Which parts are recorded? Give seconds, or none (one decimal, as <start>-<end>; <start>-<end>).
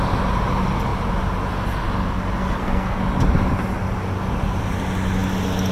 0.0-2.4; 3.0-5.7